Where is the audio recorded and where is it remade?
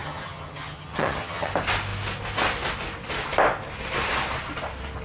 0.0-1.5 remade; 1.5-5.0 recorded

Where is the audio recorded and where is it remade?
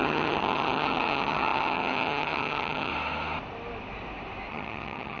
0.0-2.9 remade; 2.9-4.5 recorded; 4.5-5.2 remade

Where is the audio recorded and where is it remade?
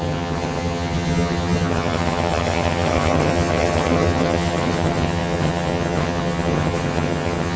0.0-7.6 remade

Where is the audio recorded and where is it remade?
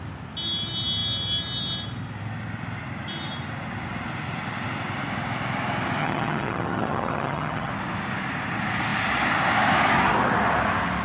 0.0-6.0 recorded; 6.0-7.7 remade; 7.7-11.0 recorded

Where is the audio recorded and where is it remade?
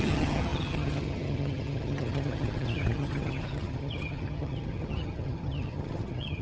0.0-6.4 remade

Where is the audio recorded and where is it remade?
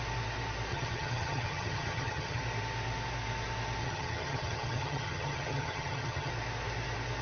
0.0-0.7 recorded; 0.7-2.4 remade; 2.4-3.8 recorded; 3.8-6.3 remade; 6.3-7.2 recorded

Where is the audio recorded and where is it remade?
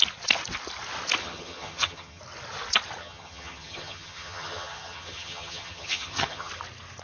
0.0-1.2 recorded; 1.2-2.2 remade; 2.2-3.0 recorded; 3.0-6.5 remade; 6.5-7.0 recorded